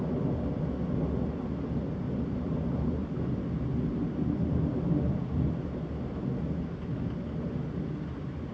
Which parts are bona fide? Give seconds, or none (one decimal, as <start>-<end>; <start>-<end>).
0.0-8.5